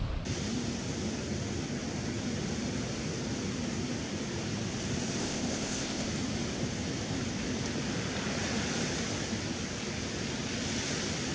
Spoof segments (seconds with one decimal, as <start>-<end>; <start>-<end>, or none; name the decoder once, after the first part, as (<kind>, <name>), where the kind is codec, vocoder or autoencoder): 5.2-6.1 (codec, ZipCodec)